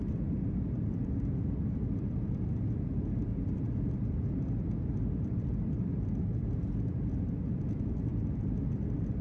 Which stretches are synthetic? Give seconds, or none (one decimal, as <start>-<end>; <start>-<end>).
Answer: 0.0-9.2